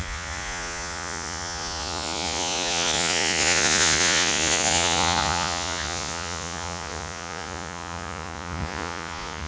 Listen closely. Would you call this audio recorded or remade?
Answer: remade